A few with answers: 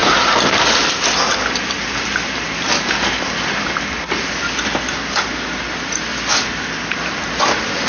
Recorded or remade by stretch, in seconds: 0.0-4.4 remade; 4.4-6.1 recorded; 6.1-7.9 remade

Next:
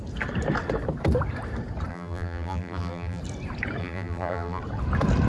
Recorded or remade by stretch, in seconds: 0.0-1.9 recorded; 1.9-3.2 remade; 3.2-3.8 recorded; 3.8-4.6 remade; 4.6-5.3 recorded

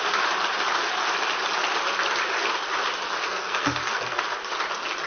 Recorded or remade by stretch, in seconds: 0.0-3.2 recorded; 3.2-4.2 remade; 4.2-5.1 recorded

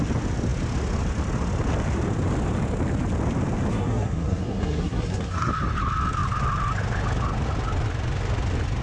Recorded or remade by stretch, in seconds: 0.0-3.7 recorded; 3.7-5.5 remade; 5.5-8.8 recorded